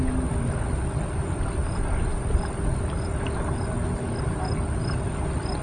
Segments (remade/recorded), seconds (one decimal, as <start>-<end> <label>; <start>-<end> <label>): 0.0-5.6 recorded